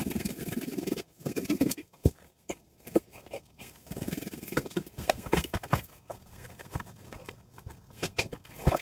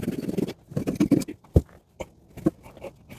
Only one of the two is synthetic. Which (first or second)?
first